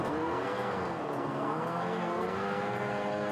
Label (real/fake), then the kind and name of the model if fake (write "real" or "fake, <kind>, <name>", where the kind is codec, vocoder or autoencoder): fake, codec, SNAC